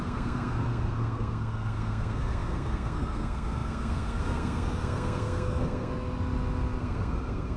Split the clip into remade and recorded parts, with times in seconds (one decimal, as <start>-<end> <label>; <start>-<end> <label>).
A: 0.0-5.9 remade; 5.9-6.8 recorded; 6.8-7.6 remade